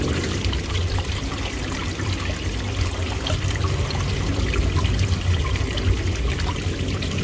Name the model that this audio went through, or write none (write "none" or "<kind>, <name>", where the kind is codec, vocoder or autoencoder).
none